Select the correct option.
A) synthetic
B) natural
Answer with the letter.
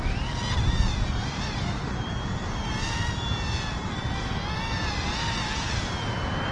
B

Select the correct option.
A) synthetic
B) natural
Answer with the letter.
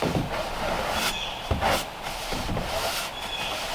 B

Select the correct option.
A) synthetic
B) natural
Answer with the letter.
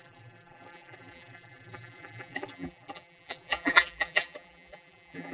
A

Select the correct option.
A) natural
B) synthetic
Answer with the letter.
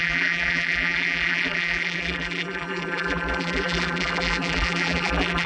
B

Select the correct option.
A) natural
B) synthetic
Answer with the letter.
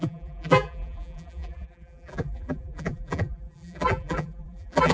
B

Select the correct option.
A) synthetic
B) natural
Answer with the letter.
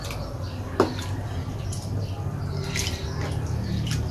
B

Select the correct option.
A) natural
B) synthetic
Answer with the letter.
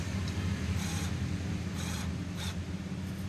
A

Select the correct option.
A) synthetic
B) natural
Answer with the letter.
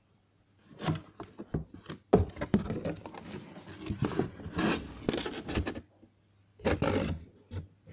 B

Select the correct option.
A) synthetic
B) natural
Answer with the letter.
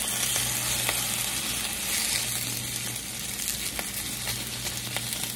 B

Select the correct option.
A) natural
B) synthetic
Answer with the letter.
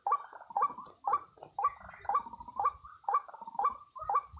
A